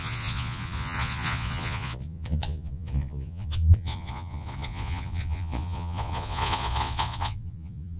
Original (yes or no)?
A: no